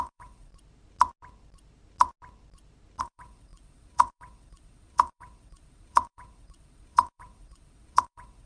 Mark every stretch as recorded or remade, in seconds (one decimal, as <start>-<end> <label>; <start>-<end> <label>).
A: 0.0-0.5 remade; 0.5-3.0 recorded; 3.0-8.5 remade

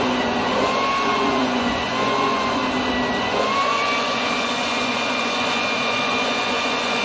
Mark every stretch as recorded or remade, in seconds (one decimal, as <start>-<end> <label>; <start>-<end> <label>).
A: 0.0-2.6 remade; 2.6-3.2 recorded; 3.2-7.0 remade

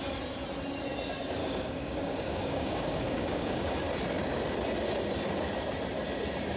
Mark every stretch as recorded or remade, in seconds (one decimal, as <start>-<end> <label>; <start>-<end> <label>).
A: 0.0-1.4 recorded; 1.4-3.7 remade; 3.7-6.6 recorded

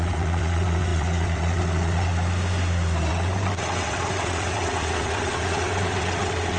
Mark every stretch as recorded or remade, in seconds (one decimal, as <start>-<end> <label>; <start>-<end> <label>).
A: 0.0-2.1 remade; 2.1-3.1 recorded; 3.1-6.6 remade

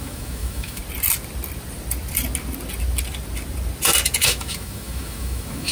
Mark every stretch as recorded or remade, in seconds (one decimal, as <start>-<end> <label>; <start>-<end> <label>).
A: 0.0-0.8 remade; 0.8-4.2 recorded; 4.2-5.7 remade

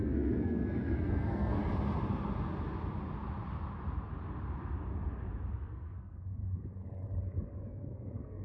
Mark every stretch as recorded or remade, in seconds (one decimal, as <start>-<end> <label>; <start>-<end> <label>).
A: 0.0-1.6 remade; 1.6-5.5 recorded; 5.5-6.4 remade; 6.4-7.5 recorded; 7.5-8.4 remade

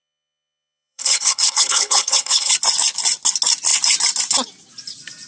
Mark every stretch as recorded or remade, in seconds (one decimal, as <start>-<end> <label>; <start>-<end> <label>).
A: 0.0-2.5 remade; 2.5-5.3 recorded

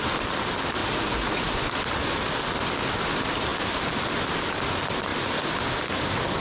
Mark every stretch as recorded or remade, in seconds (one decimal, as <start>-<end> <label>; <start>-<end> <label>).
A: 0.0-0.8 recorded; 0.8-1.5 remade; 1.5-6.4 recorded